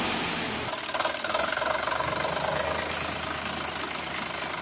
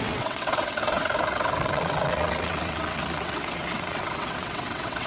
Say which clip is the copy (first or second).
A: second